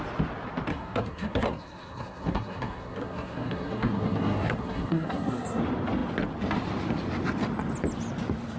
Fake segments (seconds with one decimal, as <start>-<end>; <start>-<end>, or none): 0.7-5.6